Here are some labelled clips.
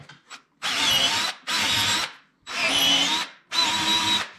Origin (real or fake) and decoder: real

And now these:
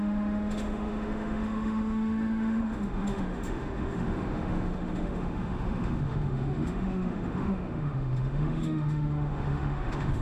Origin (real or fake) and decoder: fake, autoencoder, DAC-VAE